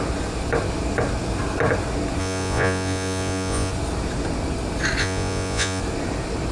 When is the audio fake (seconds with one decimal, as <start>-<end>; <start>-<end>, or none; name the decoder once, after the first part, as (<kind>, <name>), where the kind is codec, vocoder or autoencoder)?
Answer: 2.2-3.7 (vocoder, Vocos); 5.0-5.8